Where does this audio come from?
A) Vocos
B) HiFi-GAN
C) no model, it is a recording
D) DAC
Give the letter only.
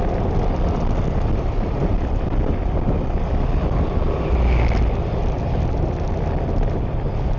C